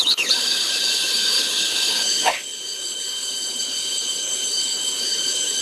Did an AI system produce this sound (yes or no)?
yes